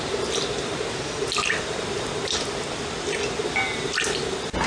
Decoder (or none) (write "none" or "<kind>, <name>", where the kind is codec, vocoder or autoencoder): none